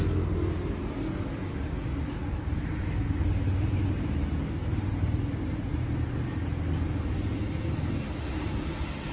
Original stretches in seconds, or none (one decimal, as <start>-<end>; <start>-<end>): 0.0-9.1